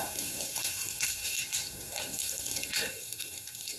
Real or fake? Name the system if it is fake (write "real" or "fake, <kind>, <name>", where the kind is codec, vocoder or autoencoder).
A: fake, codec, SNAC